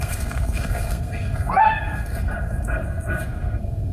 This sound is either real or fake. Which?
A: fake